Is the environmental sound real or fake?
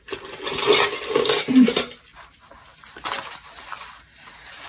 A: real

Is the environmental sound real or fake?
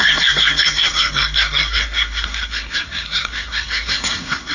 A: fake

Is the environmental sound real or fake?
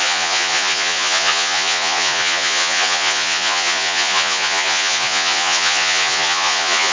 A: fake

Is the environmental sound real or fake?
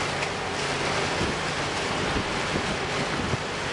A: real